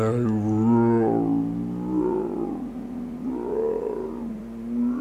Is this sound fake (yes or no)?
no